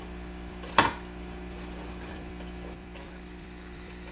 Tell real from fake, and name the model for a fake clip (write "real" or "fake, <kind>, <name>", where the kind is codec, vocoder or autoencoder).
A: fake, vocoder, BigVGAN v2